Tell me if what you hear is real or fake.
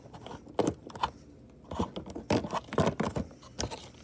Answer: real